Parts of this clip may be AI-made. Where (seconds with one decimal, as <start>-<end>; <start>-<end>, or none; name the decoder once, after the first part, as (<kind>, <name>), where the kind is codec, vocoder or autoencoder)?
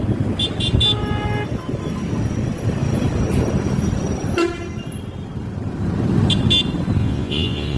7.0-7.8 (vocoder, Vocos)